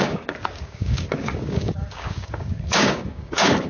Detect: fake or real fake